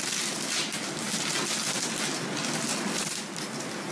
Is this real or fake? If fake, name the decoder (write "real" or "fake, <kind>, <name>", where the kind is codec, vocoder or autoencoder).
real